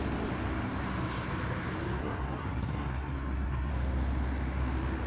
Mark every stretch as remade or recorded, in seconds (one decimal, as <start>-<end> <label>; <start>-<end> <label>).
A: 0.0-2.0 recorded; 2.0-3.7 remade; 3.7-5.1 recorded